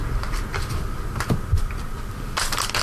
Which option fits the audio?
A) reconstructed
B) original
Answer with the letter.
B